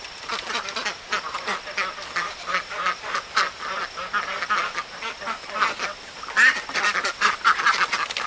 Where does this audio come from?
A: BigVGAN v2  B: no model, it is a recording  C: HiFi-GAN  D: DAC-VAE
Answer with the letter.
B